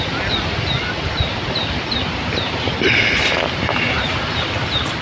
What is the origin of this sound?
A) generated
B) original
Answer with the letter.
B